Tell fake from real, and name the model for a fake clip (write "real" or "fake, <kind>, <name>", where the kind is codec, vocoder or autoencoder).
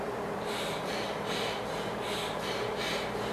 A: fake, vocoder, BigVGAN v2